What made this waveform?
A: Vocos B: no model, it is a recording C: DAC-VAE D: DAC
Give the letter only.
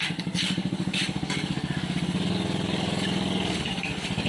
D